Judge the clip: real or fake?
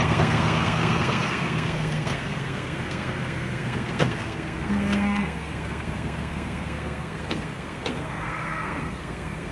fake